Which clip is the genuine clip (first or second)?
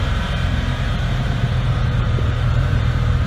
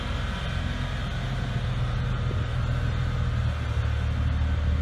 second